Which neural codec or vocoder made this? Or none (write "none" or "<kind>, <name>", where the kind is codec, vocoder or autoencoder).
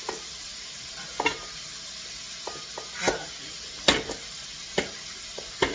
none